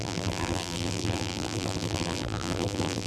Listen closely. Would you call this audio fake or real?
fake